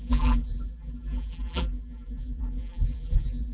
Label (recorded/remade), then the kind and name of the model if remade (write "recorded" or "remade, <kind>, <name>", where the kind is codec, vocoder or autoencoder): remade, vocoder, BigVGAN v2